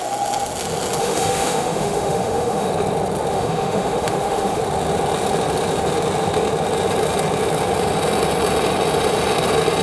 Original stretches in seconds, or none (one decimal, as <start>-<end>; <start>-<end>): 0.0-1.0; 2.7-3.3; 4.6-9.8